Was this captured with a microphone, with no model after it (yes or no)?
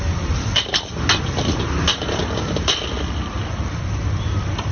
no